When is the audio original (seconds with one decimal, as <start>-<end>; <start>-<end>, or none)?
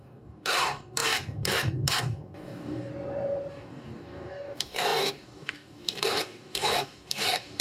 2.9-3.5